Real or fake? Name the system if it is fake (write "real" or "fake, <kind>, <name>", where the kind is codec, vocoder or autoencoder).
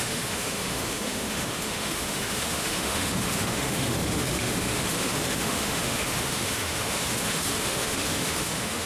fake, autoencoder, DAC-VAE